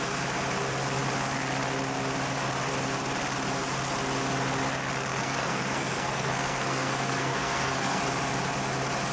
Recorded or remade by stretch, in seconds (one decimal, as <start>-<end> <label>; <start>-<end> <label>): 0.0-5.1 recorded; 5.1-8.0 remade; 8.0-9.1 recorded